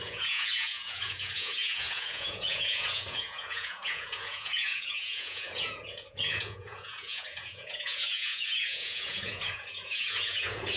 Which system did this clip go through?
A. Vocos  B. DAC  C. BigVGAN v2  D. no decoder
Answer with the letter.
A